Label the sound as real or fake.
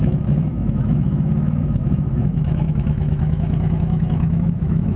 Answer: fake